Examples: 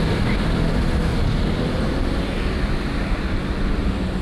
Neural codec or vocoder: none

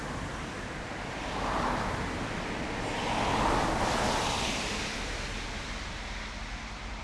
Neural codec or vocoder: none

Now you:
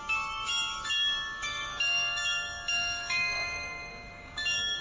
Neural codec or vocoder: codec, DAC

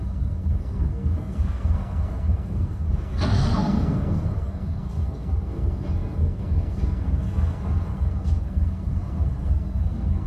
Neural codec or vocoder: codec, SNAC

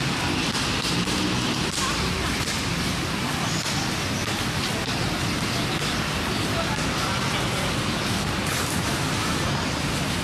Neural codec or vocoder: none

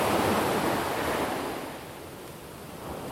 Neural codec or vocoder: none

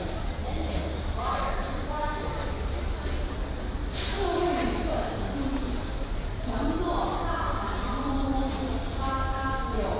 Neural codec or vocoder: none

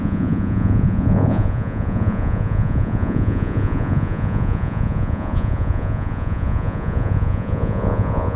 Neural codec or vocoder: vocoder, Vocos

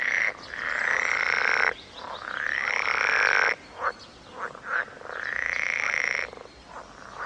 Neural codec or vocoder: none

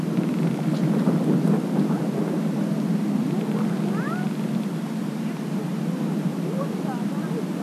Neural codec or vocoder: none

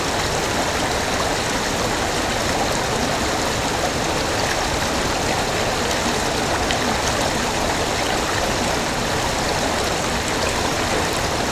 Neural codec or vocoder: none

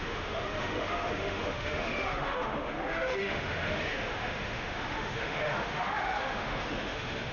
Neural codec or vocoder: autoencoder, DAC-VAE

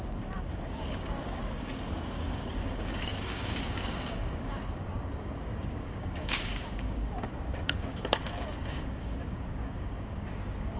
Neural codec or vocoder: codec, DAC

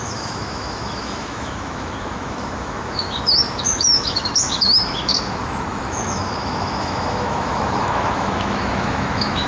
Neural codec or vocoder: autoencoder, DAC-VAE